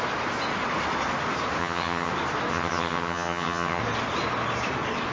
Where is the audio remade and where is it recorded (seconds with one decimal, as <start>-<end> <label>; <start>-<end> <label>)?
0.0-1.6 recorded; 1.6-2.1 remade; 2.1-2.5 recorded; 2.5-3.8 remade; 3.8-5.1 recorded